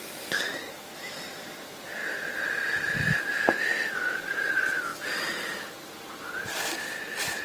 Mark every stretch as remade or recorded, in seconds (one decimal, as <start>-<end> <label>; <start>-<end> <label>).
0.0-2.0 remade; 2.0-2.6 recorded; 2.6-3.7 remade; 3.7-4.4 recorded; 4.4-4.9 remade; 4.9-6.3 recorded; 6.3-7.4 remade